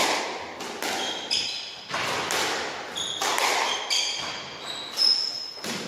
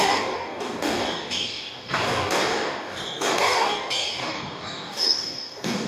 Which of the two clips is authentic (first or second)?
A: first